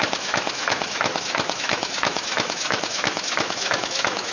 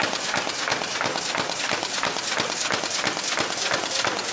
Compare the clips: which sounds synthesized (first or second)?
first